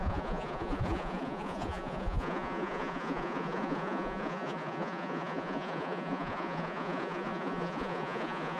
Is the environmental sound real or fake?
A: fake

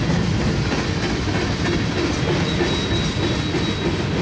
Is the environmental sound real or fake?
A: real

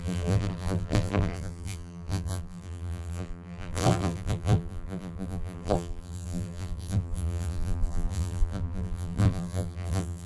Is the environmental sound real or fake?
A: fake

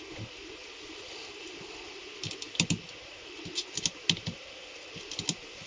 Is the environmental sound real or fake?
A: real